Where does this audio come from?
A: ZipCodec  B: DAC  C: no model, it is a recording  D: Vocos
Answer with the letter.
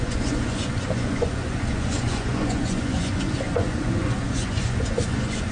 D